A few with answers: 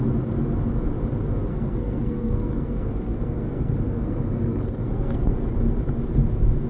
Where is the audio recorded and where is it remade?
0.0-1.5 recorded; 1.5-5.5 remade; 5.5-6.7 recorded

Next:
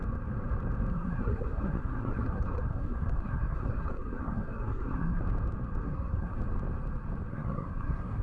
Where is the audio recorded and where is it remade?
0.0-0.9 recorded; 0.9-5.2 remade; 5.2-5.8 recorded; 5.8-6.4 remade; 6.4-7.3 recorded; 7.3-8.2 remade

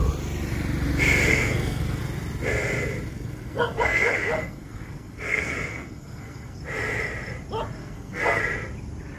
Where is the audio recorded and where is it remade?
0.0-1.3 recorded; 1.3-2.0 remade; 2.0-3.1 recorded; 3.1-6.6 remade; 6.6-7.8 recorded; 7.8-8.4 remade; 8.4-9.2 recorded

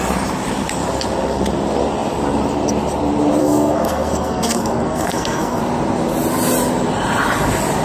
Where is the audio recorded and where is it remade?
0.0-3.4 recorded; 3.4-5.6 remade; 5.6-7.8 recorded

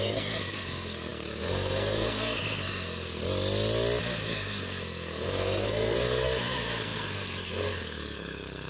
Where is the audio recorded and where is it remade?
0.0-3.2 remade; 3.2-4.0 recorded; 4.0-8.7 remade

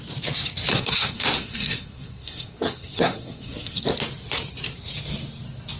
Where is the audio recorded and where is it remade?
0.0-0.7 recorded; 0.7-3.8 remade; 3.8-5.8 recorded